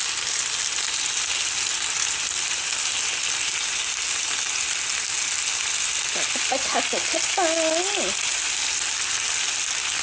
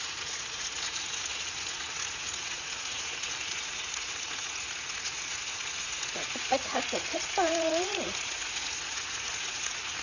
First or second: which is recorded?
first